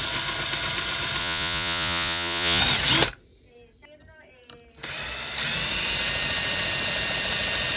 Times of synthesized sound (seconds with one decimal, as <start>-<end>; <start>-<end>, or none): 1.2-2.6